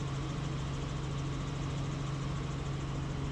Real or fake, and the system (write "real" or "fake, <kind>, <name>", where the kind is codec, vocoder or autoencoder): real